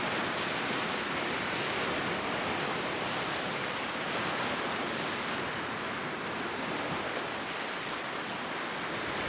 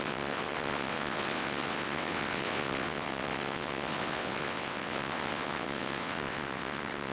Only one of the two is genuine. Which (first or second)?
first